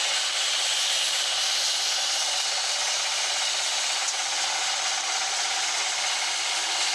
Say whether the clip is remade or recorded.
recorded